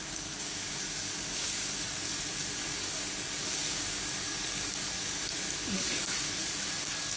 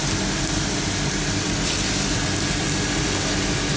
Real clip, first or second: second